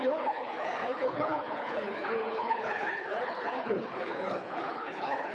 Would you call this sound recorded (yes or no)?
no